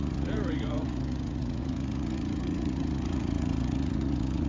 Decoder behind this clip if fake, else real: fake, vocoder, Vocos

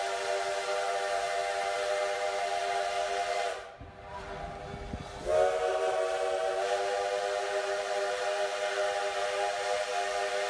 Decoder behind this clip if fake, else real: real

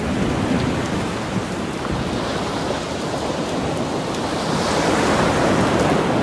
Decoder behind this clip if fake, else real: real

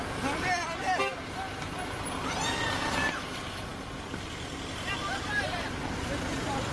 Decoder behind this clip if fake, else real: real